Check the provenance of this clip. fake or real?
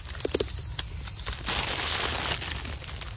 real